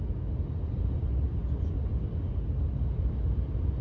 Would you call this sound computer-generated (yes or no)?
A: no